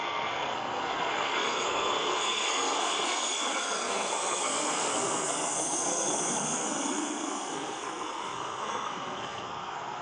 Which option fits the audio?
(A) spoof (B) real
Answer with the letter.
A